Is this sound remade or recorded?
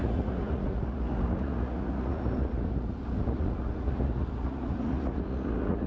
remade